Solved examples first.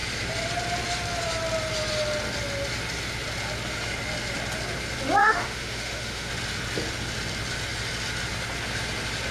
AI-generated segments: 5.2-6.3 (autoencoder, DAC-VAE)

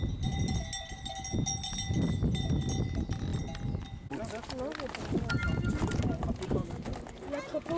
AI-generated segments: none

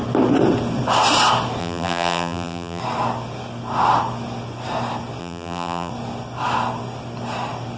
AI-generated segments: 1.6-2.8 (vocoder, BigVGAN v2); 5.2-5.9

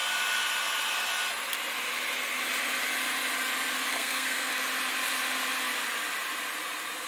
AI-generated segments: 3.9-4.5 (codec, SNAC)

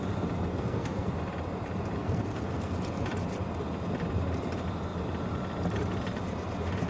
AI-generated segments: 0.5-1.1 (codec, SNAC); 2.0-2.7